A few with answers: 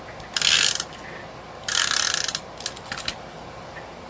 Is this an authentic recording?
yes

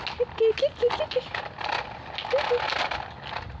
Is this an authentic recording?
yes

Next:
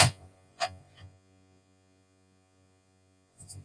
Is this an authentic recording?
no